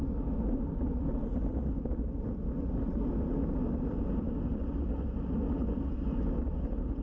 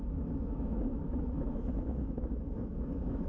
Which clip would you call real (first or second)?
first